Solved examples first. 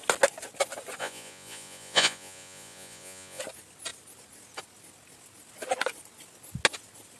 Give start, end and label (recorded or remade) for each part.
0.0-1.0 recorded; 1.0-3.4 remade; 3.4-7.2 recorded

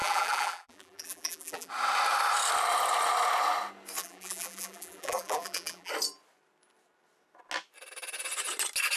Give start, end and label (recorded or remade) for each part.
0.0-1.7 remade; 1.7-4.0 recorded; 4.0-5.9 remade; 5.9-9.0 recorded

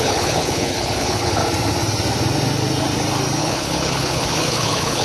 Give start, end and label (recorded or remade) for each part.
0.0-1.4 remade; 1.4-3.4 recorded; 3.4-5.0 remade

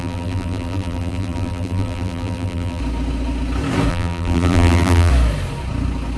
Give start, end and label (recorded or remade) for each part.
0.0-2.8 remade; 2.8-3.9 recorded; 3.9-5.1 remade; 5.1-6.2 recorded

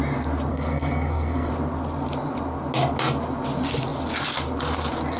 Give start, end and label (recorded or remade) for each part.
0.0-0.5 recorded; 0.5-1.5 remade; 1.5-5.2 recorded